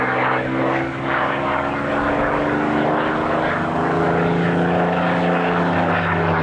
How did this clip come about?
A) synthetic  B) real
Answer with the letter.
A